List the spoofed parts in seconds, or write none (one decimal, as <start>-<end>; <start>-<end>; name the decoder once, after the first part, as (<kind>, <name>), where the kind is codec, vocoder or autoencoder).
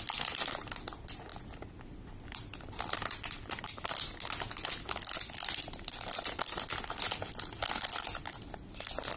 none